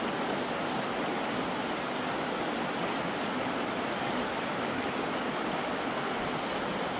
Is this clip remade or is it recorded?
recorded